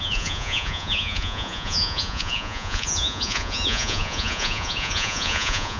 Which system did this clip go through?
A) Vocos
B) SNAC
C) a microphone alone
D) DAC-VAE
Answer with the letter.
A